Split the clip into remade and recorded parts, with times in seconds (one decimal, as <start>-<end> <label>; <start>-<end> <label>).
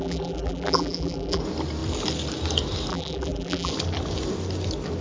0.0-1.4 remade; 1.4-2.9 recorded; 2.9-3.7 remade; 3.7-5.0 recorded